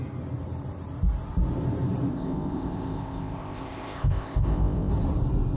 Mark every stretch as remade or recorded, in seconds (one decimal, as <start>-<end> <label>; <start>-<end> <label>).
0.0-2.1 recorded; 2.1-4.9 remade; 4.9-5.6 recorded